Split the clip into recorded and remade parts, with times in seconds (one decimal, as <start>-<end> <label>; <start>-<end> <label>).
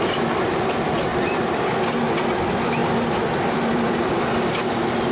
0.0-1.1 recorded; 1.1-2.0 remade; 2.0-2.8 recorded; 2.8-4.1 remade; 4.1-5.1 recorded